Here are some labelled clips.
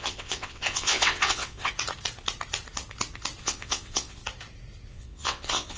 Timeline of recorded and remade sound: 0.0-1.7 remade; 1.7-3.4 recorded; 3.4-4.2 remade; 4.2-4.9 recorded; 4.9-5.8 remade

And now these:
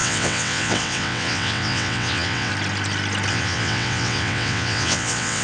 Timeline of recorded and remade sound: 0.0-2.5 remade; 2.5-3.3 recorded; 3.3-5.4 remade

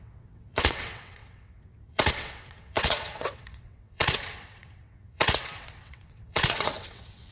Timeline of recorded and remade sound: 0.0-7.3 remade

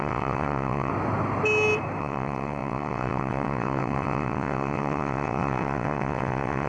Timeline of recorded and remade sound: 0.0-0.9 remade; 0.9-2.0 recorded; 2.0-6.7 remade

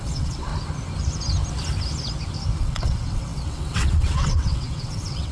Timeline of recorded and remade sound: 0.0-0.5 remade; 0.5-2.6 recorded; 2.6-5.3 remade

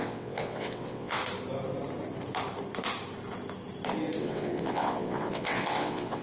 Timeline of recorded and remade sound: 0.0-1.2 remade; 1.2-4.2 recorded; 4.2-6.2 remade

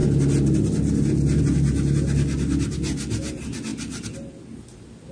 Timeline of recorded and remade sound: 0.0-5.1 recorded